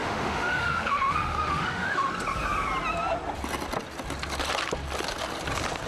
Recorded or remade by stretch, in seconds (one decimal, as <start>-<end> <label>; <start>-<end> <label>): 0.0-2.1 remade; 2.1-5.9 recorded